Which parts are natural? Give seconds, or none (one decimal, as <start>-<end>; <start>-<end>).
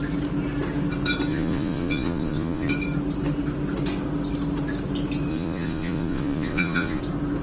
0.0-1.3; 2.7-5.3; 7.0-7.4